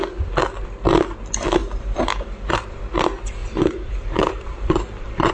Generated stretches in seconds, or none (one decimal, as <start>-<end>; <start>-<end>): 1.6-2.8; 3.4-5.3